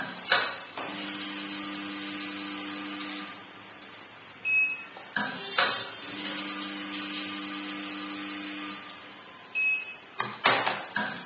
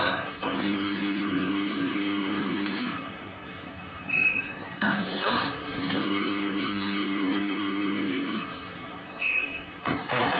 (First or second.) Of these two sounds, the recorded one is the first